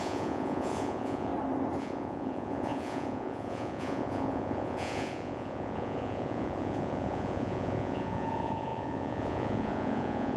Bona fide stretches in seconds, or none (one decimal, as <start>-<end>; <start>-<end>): 1.3-1.8